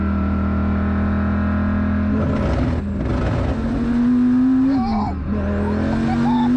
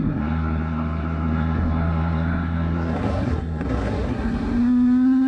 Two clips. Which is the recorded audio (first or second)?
first